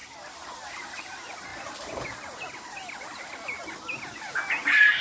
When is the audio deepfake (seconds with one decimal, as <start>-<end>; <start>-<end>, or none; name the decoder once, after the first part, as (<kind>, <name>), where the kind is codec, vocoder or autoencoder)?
none